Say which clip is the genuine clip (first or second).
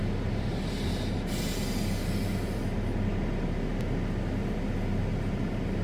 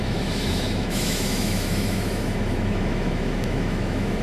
first